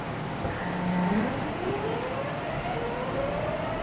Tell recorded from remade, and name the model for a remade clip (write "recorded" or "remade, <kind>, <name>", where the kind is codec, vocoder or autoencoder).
recorded